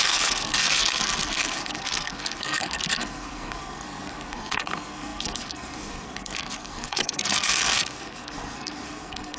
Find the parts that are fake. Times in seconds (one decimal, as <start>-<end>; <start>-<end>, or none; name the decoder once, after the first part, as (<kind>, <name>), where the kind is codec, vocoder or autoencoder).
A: 0.0-9.4 (codec, SNAC)